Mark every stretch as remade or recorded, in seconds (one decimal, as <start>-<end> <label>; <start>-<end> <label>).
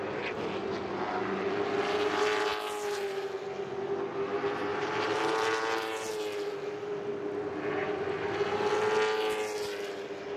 0.0-4.7 recorded; 4.7-6.1 remade; 6.1-10.4 recorded